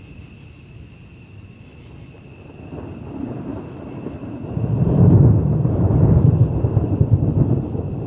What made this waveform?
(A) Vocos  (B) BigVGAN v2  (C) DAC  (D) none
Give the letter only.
D